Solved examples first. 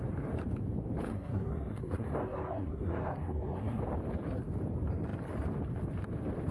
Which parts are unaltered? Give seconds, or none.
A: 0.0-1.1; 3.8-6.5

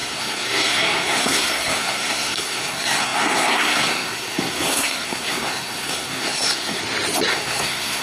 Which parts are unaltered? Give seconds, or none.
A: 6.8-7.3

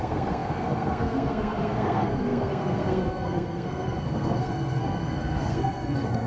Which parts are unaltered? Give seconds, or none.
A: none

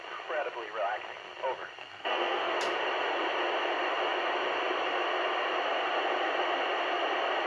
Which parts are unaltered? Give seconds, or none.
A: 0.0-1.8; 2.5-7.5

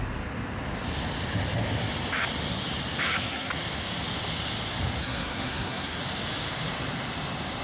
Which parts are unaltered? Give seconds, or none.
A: 0.0-3.0; 3.5-5.0; 6.0-7.6

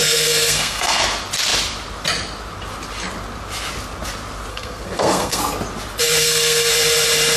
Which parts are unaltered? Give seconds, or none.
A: 1.0-4.5; 5.4-6.2; 6.7-7.4

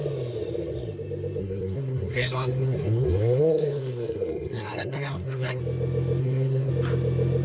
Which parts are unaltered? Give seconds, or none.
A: 0.0-1.4; 5.6-6.2; 6.7-7.4